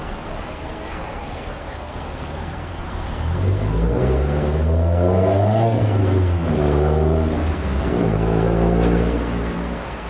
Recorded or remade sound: remade